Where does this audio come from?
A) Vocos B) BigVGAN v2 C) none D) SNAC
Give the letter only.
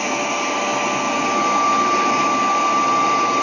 C